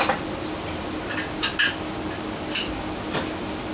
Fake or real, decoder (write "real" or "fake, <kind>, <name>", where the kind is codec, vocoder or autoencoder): real